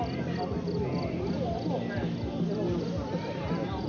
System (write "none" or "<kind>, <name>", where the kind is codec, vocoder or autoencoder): none